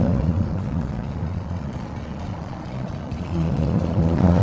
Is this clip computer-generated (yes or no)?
yes